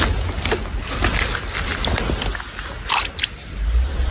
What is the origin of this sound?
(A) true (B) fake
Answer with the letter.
A